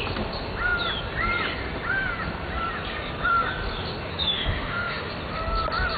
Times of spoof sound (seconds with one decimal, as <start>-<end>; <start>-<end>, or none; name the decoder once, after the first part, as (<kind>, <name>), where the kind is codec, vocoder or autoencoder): 4.1-5.1 (autoencoder, DAC-VAE)